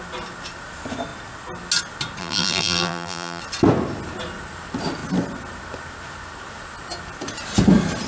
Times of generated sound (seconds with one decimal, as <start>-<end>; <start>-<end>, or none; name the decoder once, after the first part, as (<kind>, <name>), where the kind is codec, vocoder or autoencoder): 2.2-3.4 (vocoder, BigVGAN v2)